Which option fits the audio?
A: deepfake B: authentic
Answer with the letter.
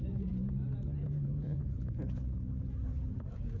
A